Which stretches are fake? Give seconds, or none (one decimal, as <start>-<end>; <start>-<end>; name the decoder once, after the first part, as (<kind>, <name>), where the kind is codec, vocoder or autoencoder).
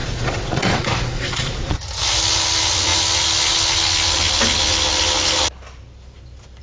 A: 0.0-1.8 (vocoder, Vocos)